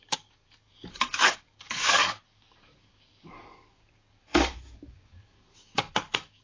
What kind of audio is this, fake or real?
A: fake